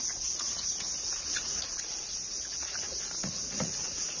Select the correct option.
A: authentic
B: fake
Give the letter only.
B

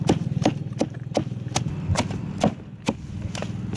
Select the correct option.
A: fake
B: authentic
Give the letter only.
B